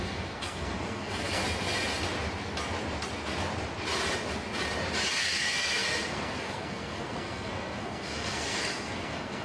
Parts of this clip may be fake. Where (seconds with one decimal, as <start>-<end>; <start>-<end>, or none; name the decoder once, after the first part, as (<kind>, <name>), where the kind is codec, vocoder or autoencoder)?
0.0-1.4 (codec, SNAC); 5.2-9.4